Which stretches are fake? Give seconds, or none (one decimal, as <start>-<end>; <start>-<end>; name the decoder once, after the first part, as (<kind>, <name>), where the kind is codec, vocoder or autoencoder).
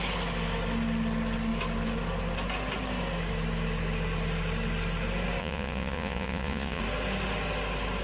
5.4-6.8 (vocoder, Vocos)